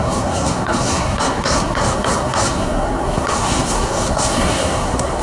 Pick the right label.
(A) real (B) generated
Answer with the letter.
B